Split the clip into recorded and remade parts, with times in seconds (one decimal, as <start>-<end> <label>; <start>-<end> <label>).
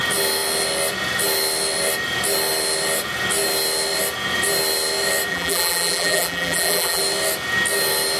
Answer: 0.0-5.3 recorded; 5.3-7.0 remade; 7.0-8.2 recorded